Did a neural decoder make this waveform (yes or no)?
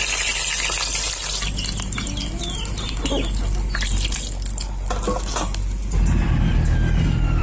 no